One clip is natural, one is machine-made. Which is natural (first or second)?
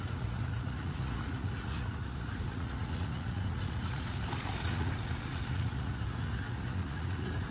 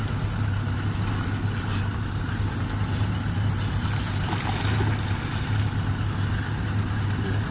second